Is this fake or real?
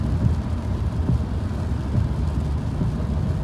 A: real